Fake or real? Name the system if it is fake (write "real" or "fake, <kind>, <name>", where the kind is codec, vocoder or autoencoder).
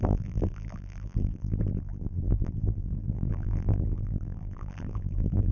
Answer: fake, vocoder, BigVGAN v2